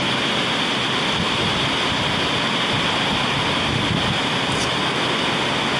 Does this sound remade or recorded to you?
recorded